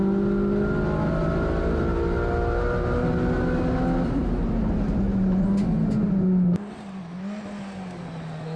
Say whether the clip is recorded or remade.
recorded